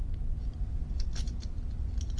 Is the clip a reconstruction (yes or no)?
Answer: no